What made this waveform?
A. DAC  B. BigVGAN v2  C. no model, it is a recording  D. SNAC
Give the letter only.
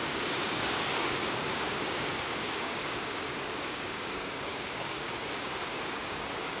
A